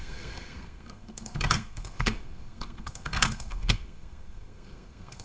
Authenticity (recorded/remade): remade